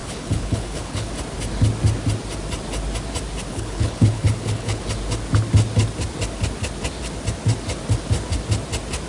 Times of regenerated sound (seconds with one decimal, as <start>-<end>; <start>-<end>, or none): 0.0-1.1; 3.5-4.8